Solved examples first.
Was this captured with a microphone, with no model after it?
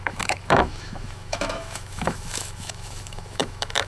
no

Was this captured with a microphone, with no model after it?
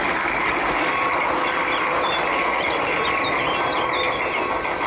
yes